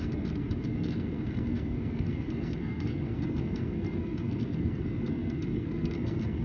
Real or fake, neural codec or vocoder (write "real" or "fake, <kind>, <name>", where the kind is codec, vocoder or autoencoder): fake, codec, SNAC